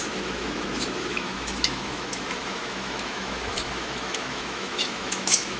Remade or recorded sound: remade